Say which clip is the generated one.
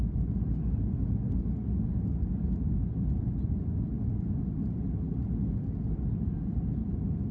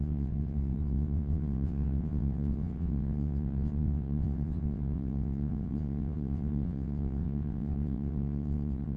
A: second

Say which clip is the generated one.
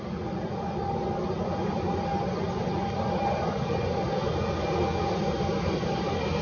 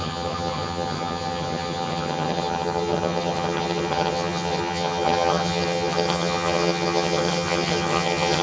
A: second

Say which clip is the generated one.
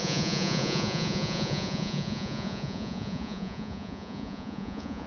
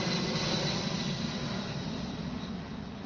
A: first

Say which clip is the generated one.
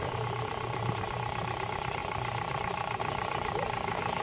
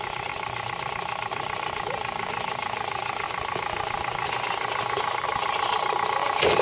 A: first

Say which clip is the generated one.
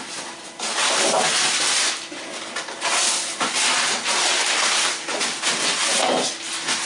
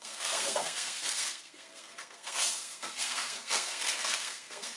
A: second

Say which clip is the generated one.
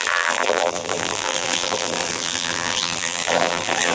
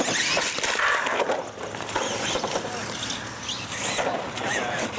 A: first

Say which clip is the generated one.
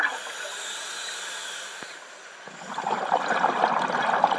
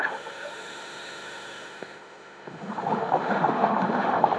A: second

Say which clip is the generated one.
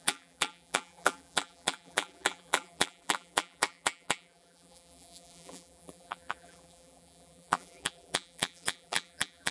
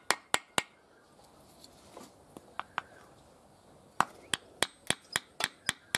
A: first